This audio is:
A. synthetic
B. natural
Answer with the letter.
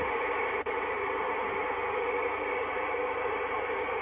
B